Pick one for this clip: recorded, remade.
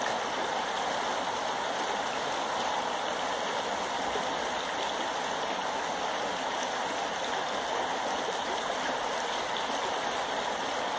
recorded